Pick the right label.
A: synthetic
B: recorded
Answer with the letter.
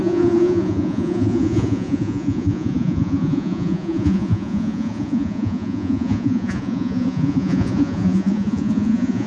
A